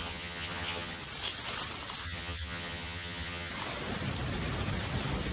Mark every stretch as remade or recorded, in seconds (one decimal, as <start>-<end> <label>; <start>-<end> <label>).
0.0-1.0 remade; 1.0-2.0 recorded; 2.0-3.5 remade; 3.5-5.3 recorded